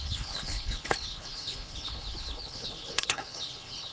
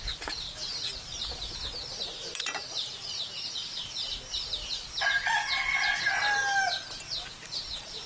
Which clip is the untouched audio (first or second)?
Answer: second